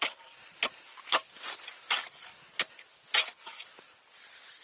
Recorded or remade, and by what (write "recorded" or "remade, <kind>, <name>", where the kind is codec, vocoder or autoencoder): recorded